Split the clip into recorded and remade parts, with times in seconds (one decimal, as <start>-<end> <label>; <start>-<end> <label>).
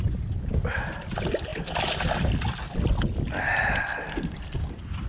0.0-5.1 recorded